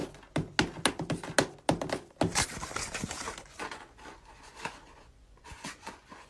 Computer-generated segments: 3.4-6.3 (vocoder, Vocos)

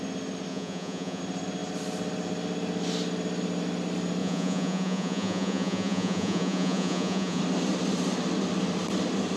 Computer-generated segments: 0.5-1.2 (vocoder, Vocos); 4.2-7.4

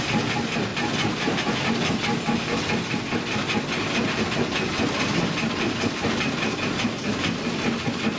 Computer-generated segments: none

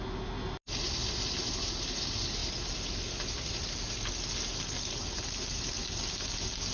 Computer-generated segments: none

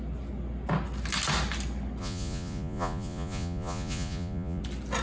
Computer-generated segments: 2.0-4.6 (vocoder, Vocos)

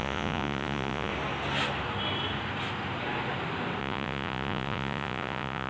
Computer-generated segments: 0.0-1.1 (vocoder, Vocos); 3.8-5.7